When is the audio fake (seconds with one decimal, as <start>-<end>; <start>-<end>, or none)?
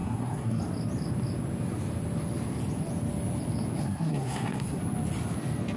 0.0-0.6; 3.8-4.8